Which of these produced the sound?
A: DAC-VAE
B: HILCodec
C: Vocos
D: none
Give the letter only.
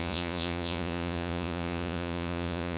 C